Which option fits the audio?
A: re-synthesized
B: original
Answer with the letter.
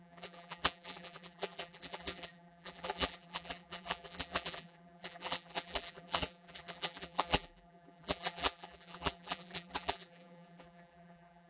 A